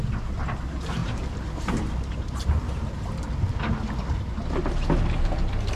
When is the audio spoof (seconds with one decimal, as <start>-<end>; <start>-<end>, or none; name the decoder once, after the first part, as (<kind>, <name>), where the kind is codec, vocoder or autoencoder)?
1.0-2.8 (vocoder, BigVGAN v2)